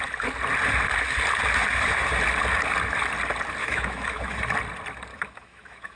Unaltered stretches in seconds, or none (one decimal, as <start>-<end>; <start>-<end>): 0.0-3.6; 4.4-5.1